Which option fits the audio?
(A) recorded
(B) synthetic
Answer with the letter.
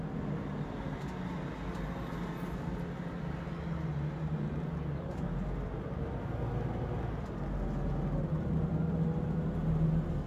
A